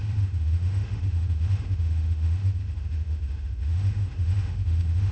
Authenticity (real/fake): fake